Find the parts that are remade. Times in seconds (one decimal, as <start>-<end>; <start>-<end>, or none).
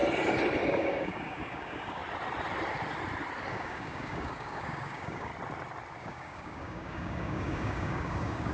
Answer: 0.6-2.0; 3.5-5.3; 6.0-8.5